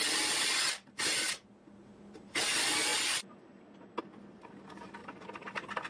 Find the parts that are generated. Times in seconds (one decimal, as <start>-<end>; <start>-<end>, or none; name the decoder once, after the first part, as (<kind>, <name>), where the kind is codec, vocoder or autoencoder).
none